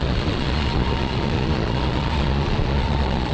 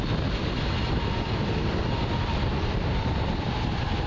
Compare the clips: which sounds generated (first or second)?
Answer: first